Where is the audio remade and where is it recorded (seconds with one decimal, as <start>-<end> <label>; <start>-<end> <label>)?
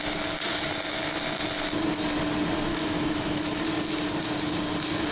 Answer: 0.0-2.7 recorded; 2.7-3.6 remade; 3.6-5.1 recorded